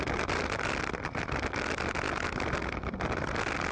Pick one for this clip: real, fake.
real